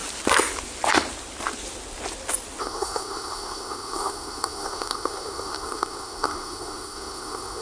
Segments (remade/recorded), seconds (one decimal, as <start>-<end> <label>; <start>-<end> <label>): 0.0-2.6 recorded; 2.6-7.6 remade

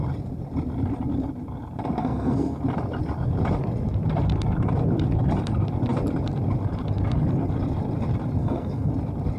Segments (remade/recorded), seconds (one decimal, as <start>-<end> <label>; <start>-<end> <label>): 0.0-2.0 recorded; 2.0-2.6 remade; 2.6-8.4 recorded; 8.4-8.9 remade; 8.9-9.4 recorded